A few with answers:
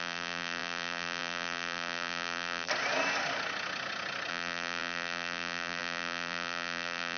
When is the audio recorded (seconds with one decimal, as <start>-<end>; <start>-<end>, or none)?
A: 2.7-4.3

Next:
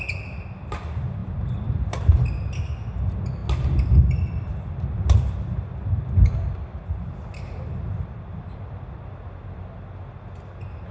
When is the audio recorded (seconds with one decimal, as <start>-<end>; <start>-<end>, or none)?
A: 0.0-10.9

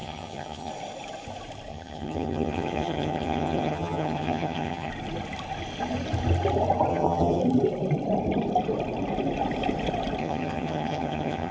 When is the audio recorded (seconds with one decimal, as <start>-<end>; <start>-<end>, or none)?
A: 0.7-1.7; 4.9-6.9; 7.4-10.2

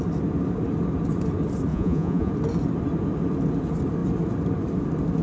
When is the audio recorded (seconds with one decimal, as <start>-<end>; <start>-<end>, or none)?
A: 0.0-1.7; 2.3-5.2

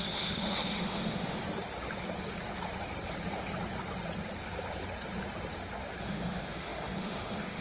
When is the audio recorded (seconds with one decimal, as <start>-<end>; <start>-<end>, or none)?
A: 1.4-6.0